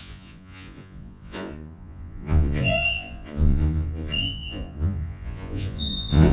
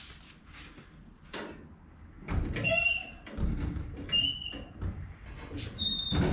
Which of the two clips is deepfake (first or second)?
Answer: first